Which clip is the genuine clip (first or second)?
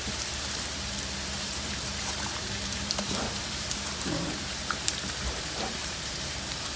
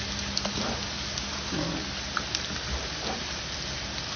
second